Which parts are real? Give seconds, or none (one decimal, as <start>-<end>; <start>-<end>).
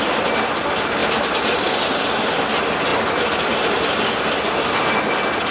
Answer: 0.0-5.5